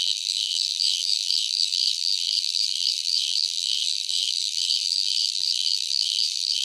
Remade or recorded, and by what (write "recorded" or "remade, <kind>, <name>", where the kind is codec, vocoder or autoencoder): remade, vocoder, BigVGAN v2